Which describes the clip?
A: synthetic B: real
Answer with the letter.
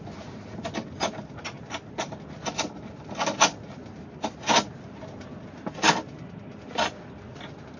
B